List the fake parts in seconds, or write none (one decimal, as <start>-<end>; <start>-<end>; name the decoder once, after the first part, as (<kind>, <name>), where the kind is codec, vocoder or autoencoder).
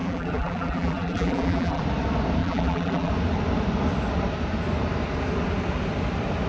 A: 0.0-1.8 (vocoder, BigVGAN v2); 2.4-3.1